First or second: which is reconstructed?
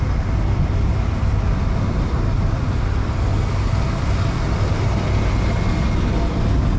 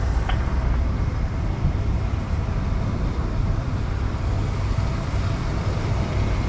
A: second